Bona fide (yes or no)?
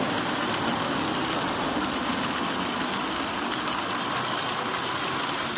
yes